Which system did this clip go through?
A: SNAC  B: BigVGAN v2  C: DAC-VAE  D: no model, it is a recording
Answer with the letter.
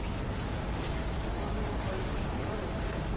D